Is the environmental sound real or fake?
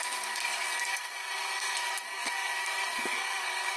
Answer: fake